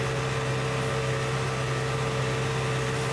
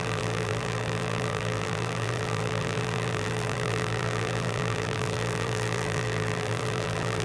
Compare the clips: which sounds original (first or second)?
first